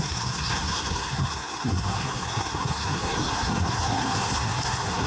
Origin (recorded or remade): remade